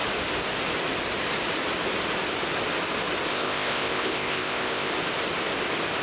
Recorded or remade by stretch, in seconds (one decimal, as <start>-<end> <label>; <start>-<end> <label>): 0.0-3.3 recorded; 3.3-4.9 remade; 4.9-6.0 recorded